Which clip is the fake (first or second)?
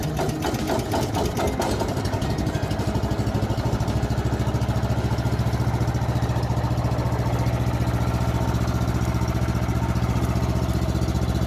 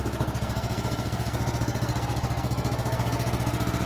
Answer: second